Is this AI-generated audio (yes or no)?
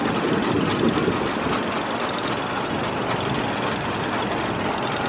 no